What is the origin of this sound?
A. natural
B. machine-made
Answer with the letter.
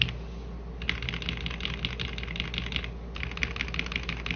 A